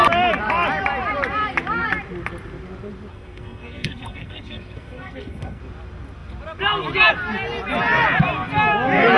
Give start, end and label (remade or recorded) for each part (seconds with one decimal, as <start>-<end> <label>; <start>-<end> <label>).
0.0-3.1 recorded; 3.1-5.6 remade; 5.6-9.2 recorded